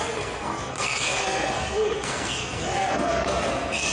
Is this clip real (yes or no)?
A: no